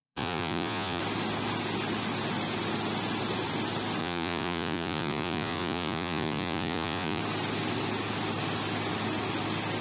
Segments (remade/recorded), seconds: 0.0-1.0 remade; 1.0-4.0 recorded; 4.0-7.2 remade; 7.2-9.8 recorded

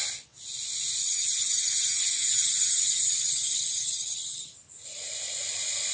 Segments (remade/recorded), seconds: 0.0-1.0 recorded; 1.0-4.5 remade; 4.5-5.9 recorded

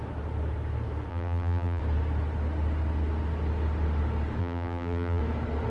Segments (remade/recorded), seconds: 0.0-1.1 recorded; 1.1-1.8 remade; 1.8-4.4 recorded; 4.4-5.2 remade; 5.2-5.7 recorded

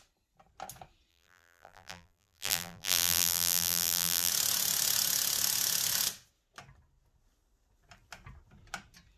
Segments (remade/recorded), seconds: 0.0-1.1 recorded; 1.1-4.3 remade; 4.3-9.2 recorded